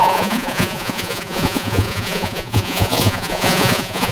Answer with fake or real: fake